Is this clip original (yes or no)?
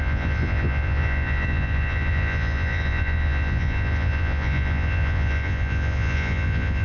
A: no